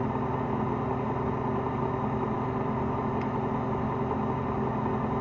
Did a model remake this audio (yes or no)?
no